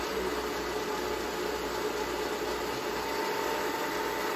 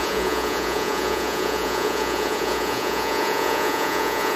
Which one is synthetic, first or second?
second